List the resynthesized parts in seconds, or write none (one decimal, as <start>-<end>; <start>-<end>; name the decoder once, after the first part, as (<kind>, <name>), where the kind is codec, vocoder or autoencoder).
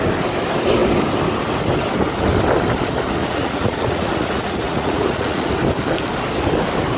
3.2-5.5 (vocoder, Vocos)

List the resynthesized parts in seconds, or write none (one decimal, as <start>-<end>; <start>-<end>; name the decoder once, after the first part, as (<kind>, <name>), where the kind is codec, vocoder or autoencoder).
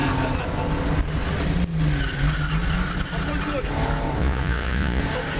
4.2-5.0 (vocoder, Vocos)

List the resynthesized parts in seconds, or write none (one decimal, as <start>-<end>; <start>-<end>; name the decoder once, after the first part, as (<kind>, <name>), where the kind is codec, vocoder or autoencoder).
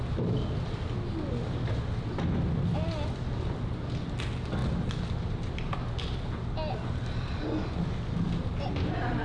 none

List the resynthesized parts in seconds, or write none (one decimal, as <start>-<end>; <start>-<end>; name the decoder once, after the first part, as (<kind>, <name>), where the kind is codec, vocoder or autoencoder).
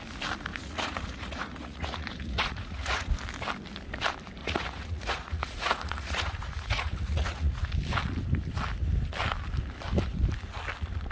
0.5-3.1 (vocoder, Vocos); 4.4-7.7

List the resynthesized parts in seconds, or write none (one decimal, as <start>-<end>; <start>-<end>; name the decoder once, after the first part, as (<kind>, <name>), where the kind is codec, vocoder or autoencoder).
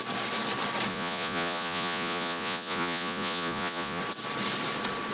0.9-4.0 (vocoder, Vocos)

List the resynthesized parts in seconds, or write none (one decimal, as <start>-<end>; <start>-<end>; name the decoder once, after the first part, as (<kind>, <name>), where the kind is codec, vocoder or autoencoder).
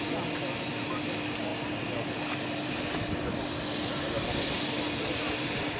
none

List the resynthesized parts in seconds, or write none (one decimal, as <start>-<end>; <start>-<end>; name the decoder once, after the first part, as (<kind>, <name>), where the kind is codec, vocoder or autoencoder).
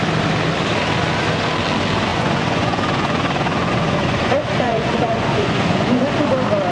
2.1-6.1 (vocoder, Vocos)